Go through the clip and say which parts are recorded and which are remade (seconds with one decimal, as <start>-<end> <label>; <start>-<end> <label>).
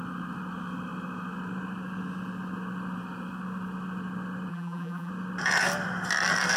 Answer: 0.0-4.5 recorded; 4.5-5.1 remade; 5.1-6.6 recorded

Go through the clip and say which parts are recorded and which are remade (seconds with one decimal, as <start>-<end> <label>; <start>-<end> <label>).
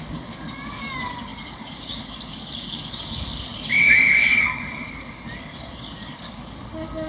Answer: 0.0-7.1 remade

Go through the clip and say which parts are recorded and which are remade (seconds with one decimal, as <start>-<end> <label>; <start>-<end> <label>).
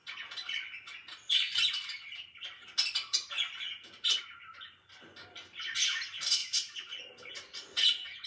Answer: 0.0-8.3 recorded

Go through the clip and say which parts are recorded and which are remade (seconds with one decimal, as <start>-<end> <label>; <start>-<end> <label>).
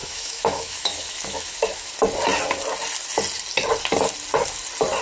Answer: 0.0-1.9 remade; 1.9-5.0 recorded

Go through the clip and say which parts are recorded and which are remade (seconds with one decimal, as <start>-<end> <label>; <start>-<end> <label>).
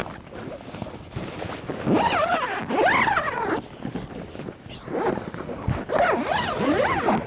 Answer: 0.0-7.3 recorded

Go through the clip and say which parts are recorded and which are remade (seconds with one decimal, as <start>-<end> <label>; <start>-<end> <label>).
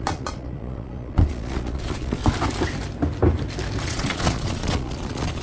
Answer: 0.0-2.2 remade; 2.2-3.8 recorded; 3.8-5.4 remade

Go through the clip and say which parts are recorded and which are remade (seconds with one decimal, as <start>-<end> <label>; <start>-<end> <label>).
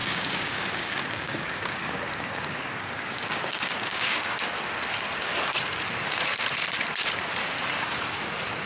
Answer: 0.0-4.4 remade; 4.4-8.7 recorded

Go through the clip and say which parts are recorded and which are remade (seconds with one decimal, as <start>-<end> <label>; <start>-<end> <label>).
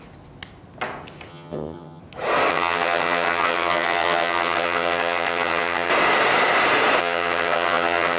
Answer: 0.0-1.3 recorded; 1.3-2.0 remade; 2.0-2.5 recorded; 2.5-5.9 remade; 5.9-7.0 recorded; 7.0-8.2 remade